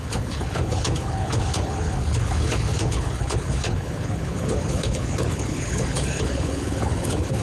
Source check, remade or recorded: remade